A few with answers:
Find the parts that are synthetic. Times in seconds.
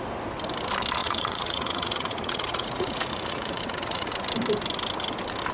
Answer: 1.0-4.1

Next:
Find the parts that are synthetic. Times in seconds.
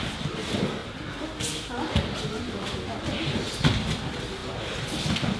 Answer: none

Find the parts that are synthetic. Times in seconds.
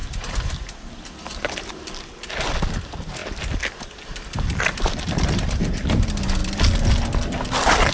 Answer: 0.0-1.7; 3.2-5.7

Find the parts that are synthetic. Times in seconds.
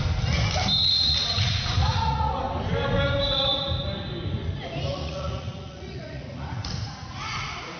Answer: 0.8-2.4; 4.9-7.8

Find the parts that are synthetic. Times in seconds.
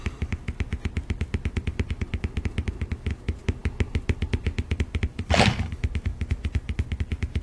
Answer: none